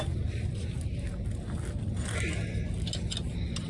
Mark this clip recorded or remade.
recorded